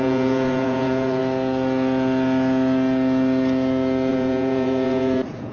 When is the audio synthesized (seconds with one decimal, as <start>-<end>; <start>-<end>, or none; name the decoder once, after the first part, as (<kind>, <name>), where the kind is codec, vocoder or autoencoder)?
0.0-1.2 (vocoder, Vocos); 4.1-5.5